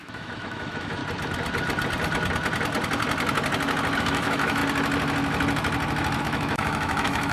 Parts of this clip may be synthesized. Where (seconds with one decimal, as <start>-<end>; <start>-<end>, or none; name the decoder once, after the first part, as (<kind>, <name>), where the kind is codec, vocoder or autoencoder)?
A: 0.0-1.0 (autoencoder, DAC-VAE); 4.0-4.6; 6.2-7.3